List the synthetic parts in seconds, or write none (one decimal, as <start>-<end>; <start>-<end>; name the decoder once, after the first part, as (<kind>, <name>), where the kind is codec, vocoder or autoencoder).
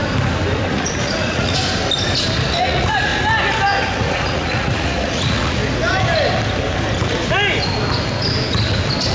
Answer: 0.7-1.6 (vocoder, Vocos); 2.5-3.1; 3.8-5.6